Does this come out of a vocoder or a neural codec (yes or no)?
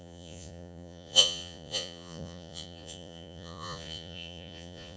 yes